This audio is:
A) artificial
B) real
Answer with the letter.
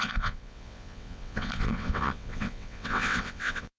A